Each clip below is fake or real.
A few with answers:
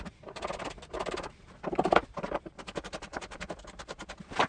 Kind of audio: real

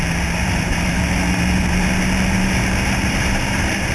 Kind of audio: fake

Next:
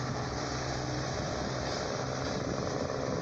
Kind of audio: real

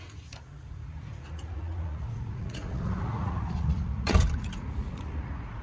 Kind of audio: fake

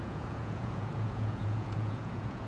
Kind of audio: fake